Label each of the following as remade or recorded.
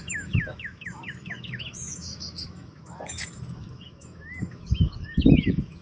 remade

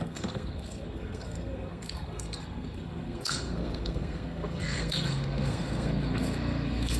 remade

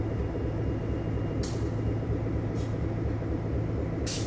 recorded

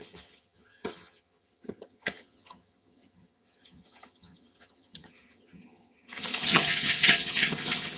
remade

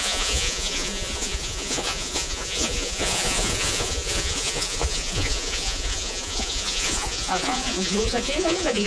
remade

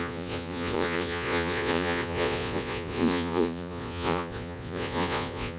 remade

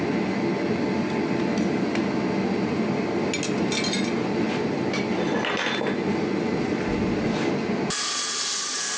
recorded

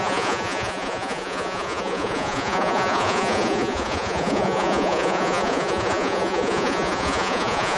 remade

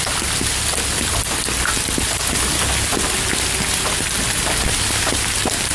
recorded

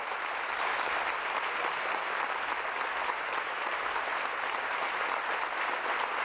recorded